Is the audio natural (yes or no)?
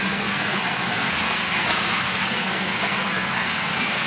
no